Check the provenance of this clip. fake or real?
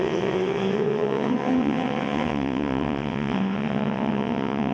fake